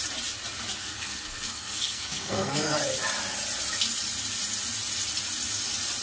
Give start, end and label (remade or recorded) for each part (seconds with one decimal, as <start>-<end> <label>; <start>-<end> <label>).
0.0-0.8 recorded; 0.8-2.7 remade; 2.7-6.0 recorded